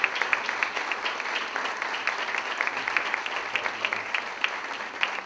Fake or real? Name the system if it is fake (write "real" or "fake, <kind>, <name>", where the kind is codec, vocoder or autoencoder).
real